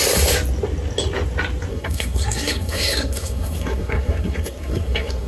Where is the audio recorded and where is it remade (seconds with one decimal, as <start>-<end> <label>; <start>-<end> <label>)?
0.0-1.7 recorded; 1.7-5.3 remade